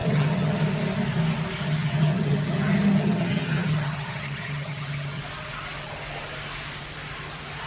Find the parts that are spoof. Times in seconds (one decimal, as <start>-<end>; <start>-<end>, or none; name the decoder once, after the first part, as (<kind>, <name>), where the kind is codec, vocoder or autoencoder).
0.0-0.6 (vocoder, HiFi-GAN); 1.6-5.2